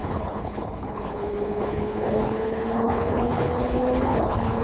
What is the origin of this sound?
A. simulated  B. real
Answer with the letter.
A